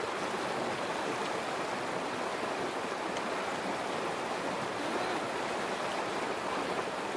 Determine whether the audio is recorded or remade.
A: recorded